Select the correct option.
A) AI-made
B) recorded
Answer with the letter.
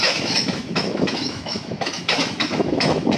A